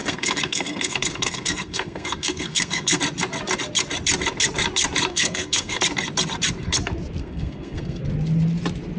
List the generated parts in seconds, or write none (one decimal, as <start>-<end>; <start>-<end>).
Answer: 0.0-3.0; 5.1-5.8; 7.2-8.0